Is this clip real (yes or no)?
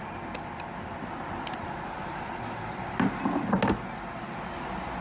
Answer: yes